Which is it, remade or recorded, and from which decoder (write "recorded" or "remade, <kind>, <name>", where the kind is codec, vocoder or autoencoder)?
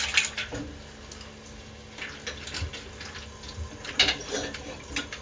recorded